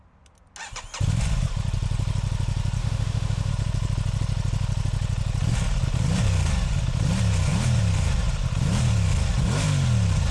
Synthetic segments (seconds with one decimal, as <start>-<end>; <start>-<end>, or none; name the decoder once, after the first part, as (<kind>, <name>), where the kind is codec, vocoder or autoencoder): 2.8-3.5 (autoencoder, DAC-VAE)